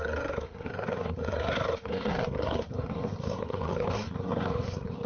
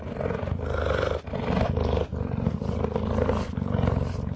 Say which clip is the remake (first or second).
first